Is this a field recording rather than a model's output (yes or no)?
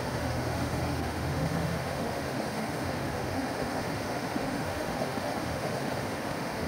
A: no